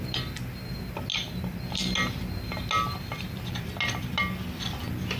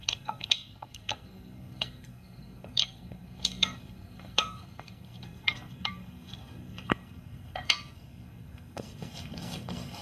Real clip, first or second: first